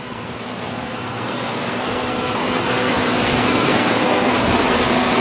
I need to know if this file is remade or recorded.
remade